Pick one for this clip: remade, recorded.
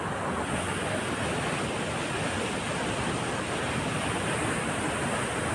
recorded